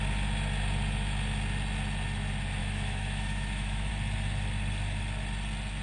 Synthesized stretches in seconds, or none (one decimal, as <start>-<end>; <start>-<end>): 2.6-3.9